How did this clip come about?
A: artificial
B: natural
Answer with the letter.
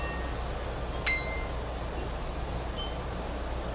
B